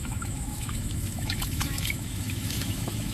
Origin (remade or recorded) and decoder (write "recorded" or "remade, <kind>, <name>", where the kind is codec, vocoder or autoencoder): remade, autoencoder, DAC-VAE